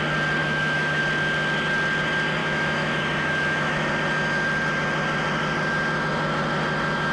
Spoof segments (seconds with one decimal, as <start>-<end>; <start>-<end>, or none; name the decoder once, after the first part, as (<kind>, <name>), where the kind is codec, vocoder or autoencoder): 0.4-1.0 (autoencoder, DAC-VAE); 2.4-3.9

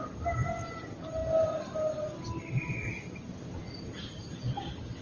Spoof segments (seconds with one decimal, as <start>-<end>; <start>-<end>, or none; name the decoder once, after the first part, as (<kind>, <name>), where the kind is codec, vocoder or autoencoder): none

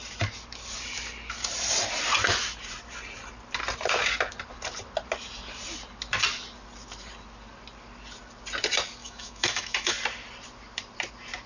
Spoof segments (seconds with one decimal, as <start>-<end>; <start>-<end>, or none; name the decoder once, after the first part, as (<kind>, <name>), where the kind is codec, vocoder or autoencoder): 9.0-9.9 (autoencoder, DAC-VAE)

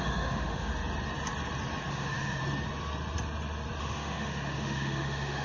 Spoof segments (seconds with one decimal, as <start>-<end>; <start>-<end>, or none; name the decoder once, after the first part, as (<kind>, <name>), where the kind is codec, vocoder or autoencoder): 0.0-0.7 (autoencoder, DAC-VAE); 1.9-2.4; 3.8-5.4